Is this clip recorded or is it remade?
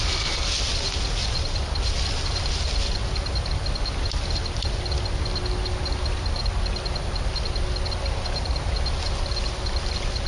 recorded